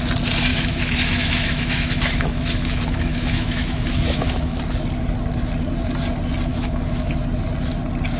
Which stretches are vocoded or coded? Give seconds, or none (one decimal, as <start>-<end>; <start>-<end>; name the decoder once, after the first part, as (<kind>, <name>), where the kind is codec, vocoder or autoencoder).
0.5-4.6 (autoencoder, DAC-VAE); 6.5-7.1